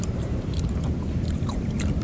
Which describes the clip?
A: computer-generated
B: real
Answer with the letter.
A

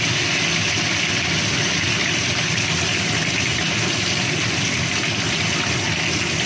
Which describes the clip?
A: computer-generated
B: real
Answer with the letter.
B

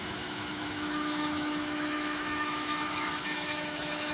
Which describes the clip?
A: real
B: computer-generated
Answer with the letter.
B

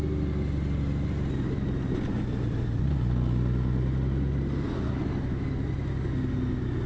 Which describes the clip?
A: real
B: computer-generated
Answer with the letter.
A